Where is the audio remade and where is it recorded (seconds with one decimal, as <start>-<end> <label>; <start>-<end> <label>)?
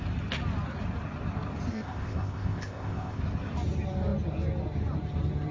0.0-1.7 recorded; 1.7-3.2 remade; 3.2-5.5 recorded